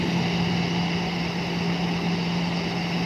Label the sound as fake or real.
real